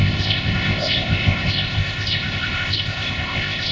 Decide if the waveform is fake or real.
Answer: fake